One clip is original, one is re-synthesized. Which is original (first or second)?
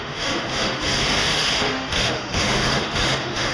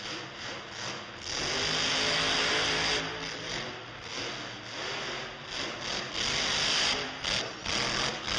second